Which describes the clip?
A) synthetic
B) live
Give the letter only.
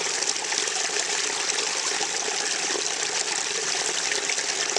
B